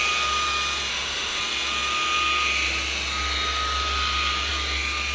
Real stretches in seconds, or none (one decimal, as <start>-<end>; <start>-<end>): 0.0-0.9; 1.4-5.1